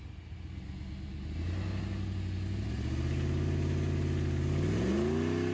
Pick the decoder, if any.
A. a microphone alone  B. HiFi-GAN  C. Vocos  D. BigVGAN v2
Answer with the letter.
A